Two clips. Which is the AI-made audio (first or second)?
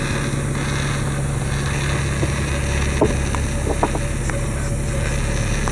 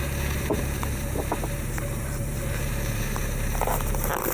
second